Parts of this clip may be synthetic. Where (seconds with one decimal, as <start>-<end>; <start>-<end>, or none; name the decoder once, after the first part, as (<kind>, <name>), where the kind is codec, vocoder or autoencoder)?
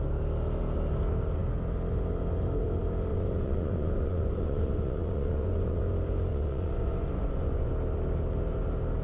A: 3.1-5.8 (vocoder, Vocos); 6.3-7.7